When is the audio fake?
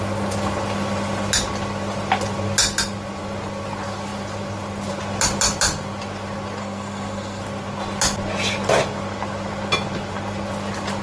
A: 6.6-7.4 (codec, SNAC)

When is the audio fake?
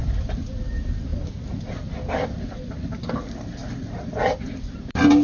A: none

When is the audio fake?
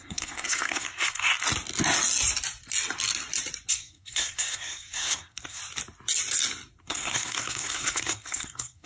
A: 0.0-1.3 (codec, SNAC); 3.7-5.6; 6.8-8.9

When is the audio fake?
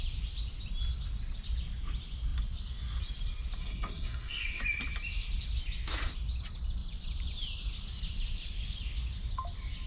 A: 3.6-4.6 (codec, SNAC)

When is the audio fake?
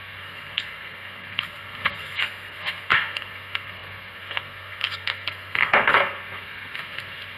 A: 0.0-7.4 (codec, SNAC)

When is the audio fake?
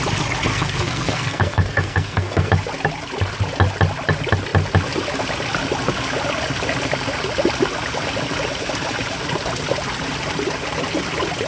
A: 0.5-2.5 (codec, SNAC)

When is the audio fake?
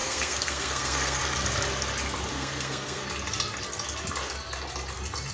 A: 0.0-1.2 (codec, SNAC); 2.3-3.1